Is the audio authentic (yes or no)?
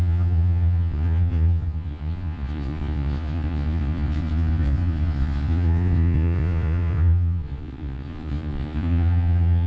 no